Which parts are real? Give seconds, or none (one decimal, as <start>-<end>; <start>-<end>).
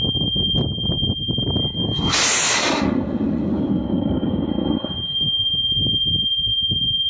0.0-3.5; 4.5-7.1